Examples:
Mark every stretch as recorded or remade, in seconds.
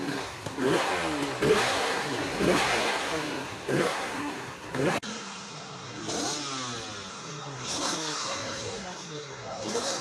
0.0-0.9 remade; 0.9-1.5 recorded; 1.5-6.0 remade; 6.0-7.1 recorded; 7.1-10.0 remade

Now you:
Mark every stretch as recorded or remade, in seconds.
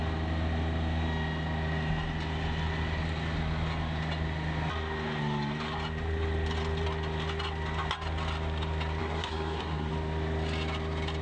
0.0-9.0 recorded; 9.0-9.9 remade; 9.9-11.2 recorded